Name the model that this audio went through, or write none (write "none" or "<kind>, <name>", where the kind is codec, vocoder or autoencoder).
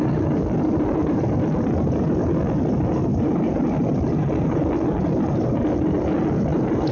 none